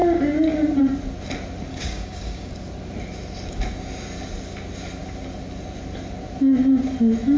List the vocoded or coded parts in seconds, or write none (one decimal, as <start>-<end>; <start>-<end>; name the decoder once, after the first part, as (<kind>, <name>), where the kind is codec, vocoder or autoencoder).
1.7-2.5 (codec, DAC)